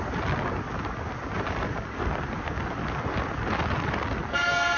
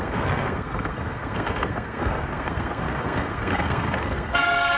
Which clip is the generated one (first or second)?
second